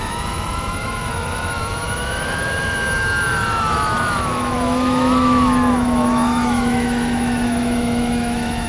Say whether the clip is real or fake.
fake